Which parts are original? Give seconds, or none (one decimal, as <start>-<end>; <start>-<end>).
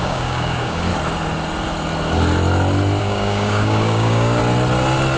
0.9-3.0; 4.4-5.2